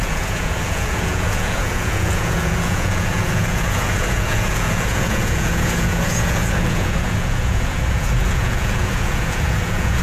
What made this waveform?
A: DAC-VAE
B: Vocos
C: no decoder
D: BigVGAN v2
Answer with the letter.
B